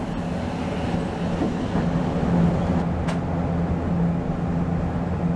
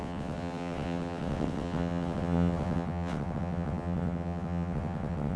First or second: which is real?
first